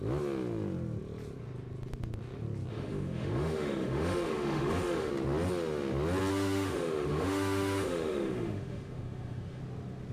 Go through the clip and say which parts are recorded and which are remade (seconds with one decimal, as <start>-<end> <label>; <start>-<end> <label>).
0.0-2.7 recorded; 2.7-5.1 remade; 5.1-6.3 recorded; 6.3-9.6 remade; 9.6-10.1 recorded